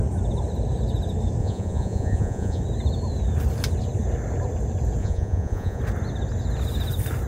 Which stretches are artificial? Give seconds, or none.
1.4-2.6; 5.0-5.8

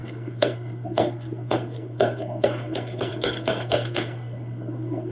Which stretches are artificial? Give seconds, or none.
0.0-5.1

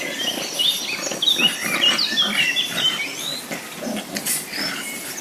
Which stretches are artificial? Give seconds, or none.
none

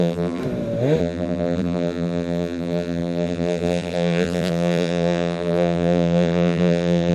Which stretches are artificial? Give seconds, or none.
0.0-0.4; 1.0-7.1

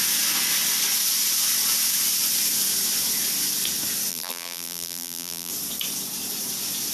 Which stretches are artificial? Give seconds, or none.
4.1-5.5

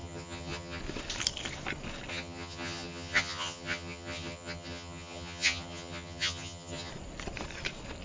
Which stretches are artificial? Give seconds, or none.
0.0-0.8; 2.1-6.9